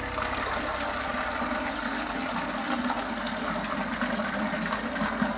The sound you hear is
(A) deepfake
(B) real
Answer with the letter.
B